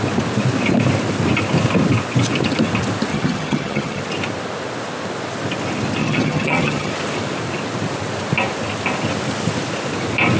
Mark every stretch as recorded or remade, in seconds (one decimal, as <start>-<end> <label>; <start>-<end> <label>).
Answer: 0.0-3.1 recorded; 3.1-4.0 remade; 4.0-6.0 recorded; 6.0-6.9 remade; 6.9-10.4 recorded